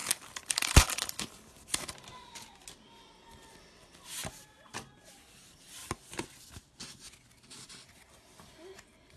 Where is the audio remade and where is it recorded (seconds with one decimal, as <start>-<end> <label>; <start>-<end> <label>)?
0.0-1.2 remade; 1.2-4.2 recorded; 4.2-4.7 remade; 4.7-5.8 recorded; 5.8-6.5 remade; 6.5-9.2 recorded